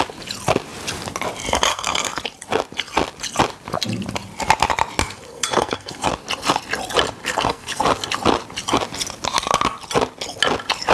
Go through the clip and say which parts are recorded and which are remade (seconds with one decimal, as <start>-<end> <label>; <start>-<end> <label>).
0.0-1.7 recorded; 1.7-2.2 remade; 2.2-5.0 recorded; 5.0-6.1 remade; 6.1-7.2 recorded; 7.2-7.8 remade; 7.8-10.9 recorded